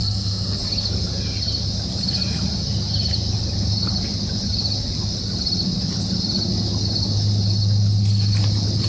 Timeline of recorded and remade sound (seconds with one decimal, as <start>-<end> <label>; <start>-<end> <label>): 0.0-0.6 remade; 0.6-8.9 recorded

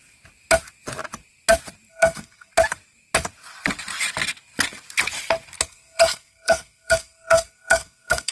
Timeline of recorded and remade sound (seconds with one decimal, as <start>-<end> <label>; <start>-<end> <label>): 0.0-1.9 recorded; 1.9-2.5 remade; 2.5-5.7 recorded; 5.7-8.3 remade

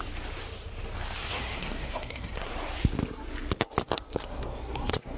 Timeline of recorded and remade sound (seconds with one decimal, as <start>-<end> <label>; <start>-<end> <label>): 0.0-1.2 recorded; 1.2-2.5 remade; 2.5-4.2 recorded; 4.2-5.2 remade

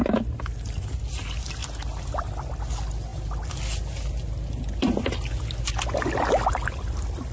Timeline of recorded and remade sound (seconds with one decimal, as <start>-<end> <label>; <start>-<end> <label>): 0.0-7.3 recorded